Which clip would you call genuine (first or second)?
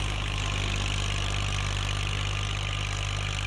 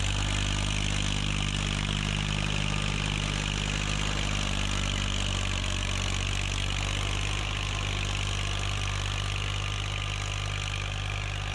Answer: second